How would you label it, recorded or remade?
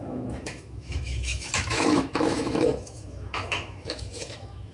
remade